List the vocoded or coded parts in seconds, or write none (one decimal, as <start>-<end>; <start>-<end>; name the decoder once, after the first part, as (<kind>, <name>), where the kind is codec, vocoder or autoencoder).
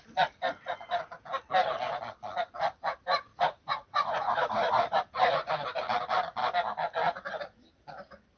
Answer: 3.3-5.5 (vocoder, Vocos)